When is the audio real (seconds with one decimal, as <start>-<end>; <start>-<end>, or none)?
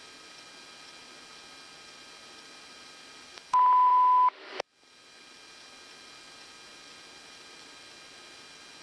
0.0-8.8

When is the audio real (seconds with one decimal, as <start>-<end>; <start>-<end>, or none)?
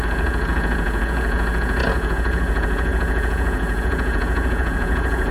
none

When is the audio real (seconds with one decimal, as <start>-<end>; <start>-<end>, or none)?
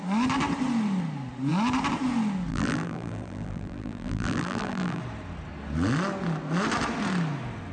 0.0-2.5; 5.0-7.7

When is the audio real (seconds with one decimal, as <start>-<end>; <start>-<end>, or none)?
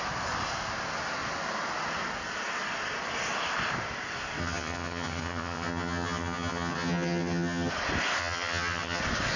0.0-4.4; 7.7-8.2; 9.0-9.4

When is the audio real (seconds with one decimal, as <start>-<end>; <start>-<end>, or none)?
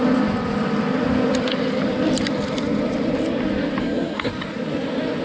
0.0-3.8; 4.3-5.2